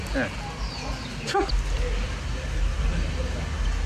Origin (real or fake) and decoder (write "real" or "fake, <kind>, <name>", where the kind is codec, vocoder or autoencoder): real